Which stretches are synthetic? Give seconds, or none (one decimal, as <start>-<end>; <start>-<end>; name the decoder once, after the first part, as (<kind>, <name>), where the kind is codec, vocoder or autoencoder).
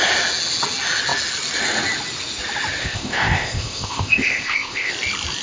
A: 2.8-4.9 (codec, ZipCodec)